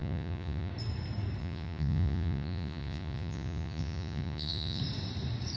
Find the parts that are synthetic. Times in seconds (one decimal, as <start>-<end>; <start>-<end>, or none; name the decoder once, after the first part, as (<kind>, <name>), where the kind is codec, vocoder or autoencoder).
0.0-0.7 (vocoder, Vocos); 1.4-4.8